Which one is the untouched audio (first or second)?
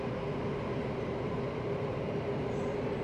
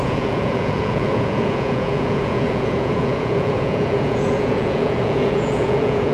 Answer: first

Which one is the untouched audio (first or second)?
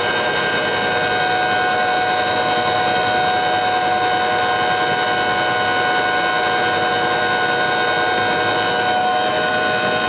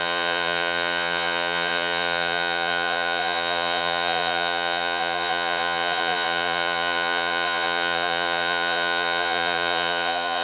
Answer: first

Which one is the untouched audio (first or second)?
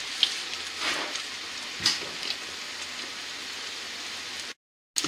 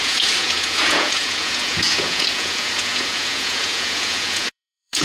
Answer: first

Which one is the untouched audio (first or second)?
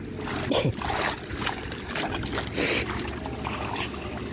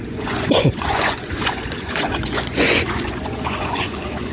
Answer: first